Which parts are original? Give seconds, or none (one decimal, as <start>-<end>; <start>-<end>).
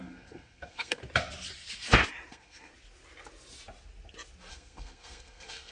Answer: 1.0-2.3; 2.7-4.5